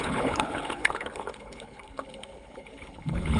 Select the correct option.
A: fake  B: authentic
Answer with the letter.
A